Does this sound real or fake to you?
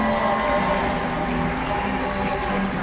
real